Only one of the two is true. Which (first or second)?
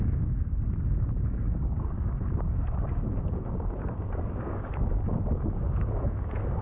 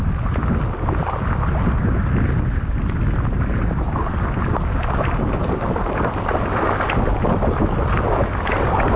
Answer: second